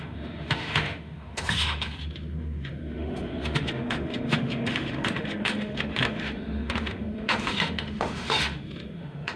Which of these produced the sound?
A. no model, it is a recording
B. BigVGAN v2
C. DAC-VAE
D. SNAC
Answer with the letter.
C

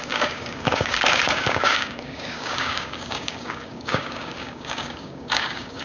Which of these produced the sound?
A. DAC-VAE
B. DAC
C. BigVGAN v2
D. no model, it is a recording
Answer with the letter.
B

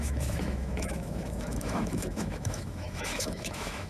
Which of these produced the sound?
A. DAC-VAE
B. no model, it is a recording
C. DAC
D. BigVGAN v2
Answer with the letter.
A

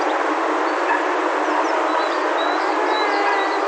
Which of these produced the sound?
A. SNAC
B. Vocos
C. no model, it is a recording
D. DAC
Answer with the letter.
C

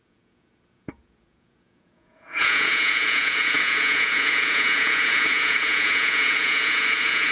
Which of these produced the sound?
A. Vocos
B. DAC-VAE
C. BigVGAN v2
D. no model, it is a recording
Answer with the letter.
A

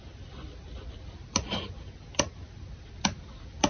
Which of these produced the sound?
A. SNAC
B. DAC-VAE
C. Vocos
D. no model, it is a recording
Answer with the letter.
D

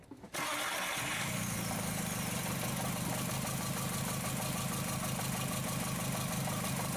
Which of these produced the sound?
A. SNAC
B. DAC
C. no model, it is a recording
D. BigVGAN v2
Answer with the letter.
C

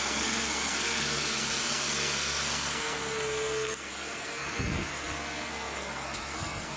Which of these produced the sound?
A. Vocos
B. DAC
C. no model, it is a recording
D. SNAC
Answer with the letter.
D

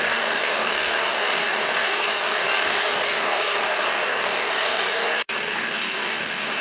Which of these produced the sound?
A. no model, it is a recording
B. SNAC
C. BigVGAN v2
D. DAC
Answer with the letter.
D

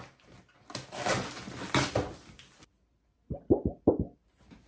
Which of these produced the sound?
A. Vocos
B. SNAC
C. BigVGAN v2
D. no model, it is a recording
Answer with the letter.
D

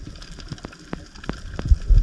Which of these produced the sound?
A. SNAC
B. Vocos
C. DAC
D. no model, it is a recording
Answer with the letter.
D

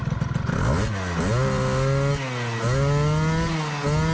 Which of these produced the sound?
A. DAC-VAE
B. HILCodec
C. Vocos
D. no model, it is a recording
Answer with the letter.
D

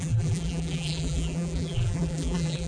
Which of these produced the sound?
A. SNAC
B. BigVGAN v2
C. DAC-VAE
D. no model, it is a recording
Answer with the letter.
B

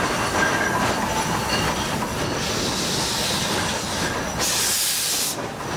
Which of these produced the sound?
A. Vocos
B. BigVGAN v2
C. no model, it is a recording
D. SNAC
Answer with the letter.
C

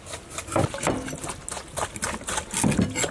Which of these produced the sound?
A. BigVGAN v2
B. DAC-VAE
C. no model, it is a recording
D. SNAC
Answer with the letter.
C